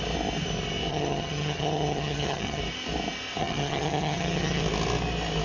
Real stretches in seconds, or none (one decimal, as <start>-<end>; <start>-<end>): 0.0-0.9; 2.6-3.4; 4.6-5.4

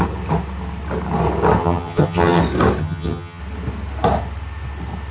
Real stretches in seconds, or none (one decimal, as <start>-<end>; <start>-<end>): 0.0-1.6; 2.4-2.8; 3.4-5.1

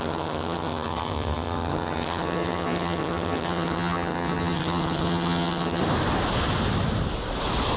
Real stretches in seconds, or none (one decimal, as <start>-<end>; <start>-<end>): 5.8-7.8

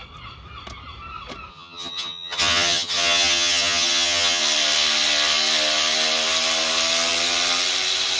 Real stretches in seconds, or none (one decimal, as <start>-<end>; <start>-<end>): 0.0-1.5; 4.4-8.2

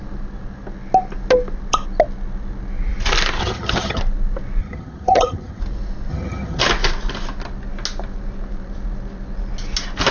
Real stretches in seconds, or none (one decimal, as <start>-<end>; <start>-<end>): 0.0-3.4; 4.0-4.6; 5.6-6.1; 6.6-10.1

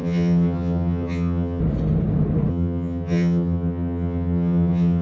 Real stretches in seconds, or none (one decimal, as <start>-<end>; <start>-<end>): 1.6-2.5